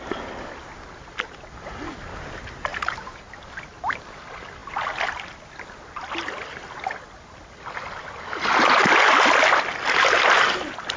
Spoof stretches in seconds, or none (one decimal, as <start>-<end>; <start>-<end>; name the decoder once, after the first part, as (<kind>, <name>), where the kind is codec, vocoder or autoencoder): 2.7-3.3 (vocoder, BigVGAN v2)